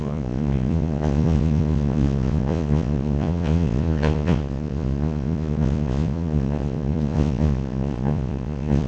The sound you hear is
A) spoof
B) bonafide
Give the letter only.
A